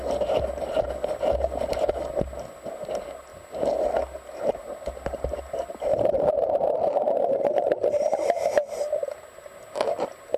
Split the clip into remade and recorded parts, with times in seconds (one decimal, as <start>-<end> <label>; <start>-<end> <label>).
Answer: 0.0-10.4 recorded